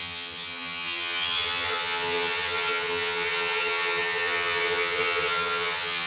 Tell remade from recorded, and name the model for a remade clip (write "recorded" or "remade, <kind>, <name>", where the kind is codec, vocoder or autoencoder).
remade, vocoder, HiFi-GAN